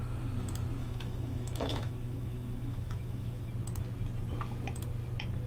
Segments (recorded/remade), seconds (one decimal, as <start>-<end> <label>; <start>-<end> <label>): 0.0-0.8 recorded; 0.8-3.5 remade; 3.5-5.5 recorded